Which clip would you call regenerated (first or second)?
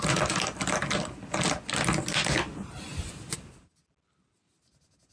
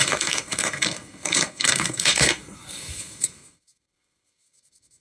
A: second